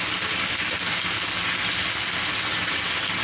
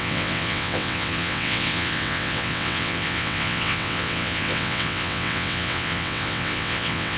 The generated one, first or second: second